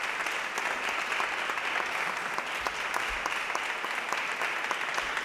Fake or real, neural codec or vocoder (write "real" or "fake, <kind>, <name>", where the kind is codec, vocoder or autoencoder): real